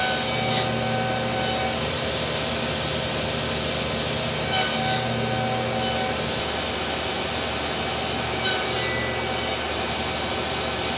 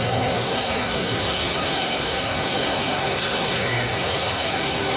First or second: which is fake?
second